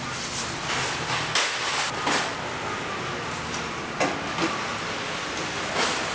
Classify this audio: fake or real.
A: real